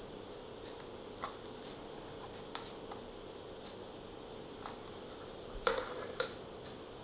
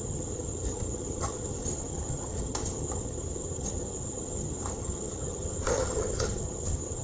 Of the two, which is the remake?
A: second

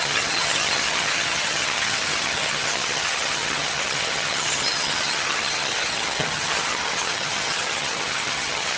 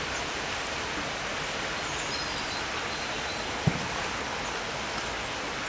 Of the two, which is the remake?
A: first